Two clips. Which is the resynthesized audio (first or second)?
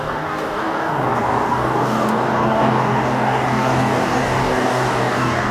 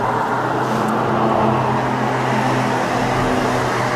first